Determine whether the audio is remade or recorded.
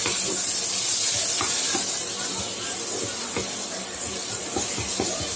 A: recorded